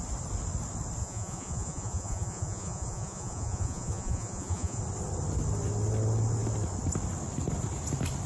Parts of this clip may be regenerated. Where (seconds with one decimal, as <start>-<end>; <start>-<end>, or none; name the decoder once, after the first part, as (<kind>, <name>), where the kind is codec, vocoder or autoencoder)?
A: 1.0-4.8 (vocoder, Vocos)